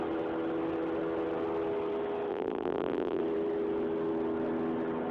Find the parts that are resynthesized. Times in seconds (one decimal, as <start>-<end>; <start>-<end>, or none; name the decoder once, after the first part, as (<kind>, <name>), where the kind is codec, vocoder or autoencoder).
2.3-3.2 (vocoder, BigVGAN v2)